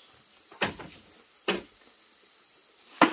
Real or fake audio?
real